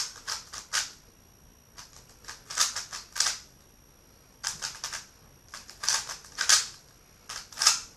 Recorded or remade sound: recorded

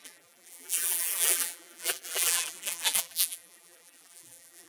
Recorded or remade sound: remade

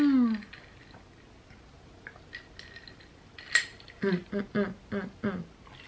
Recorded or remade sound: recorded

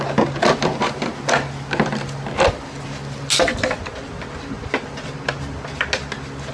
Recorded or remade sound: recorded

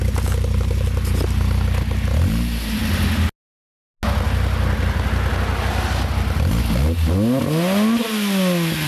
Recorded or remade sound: recorded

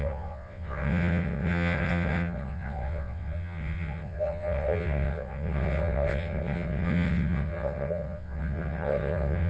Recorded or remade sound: remade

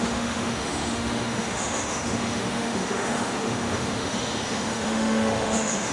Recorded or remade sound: remade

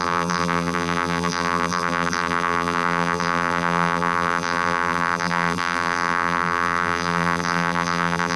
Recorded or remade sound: remade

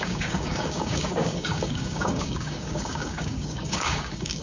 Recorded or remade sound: remade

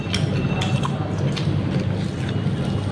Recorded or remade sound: recorded